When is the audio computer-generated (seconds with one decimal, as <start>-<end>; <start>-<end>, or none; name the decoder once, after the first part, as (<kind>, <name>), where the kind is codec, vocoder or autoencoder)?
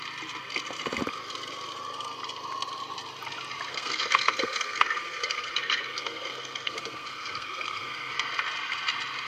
3.7-8.1 (codec, SNAC)